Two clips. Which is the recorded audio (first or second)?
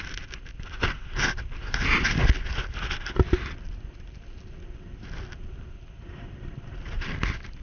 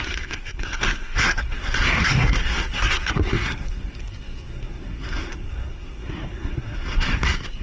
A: first